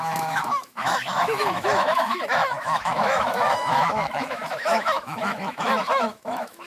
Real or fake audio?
fake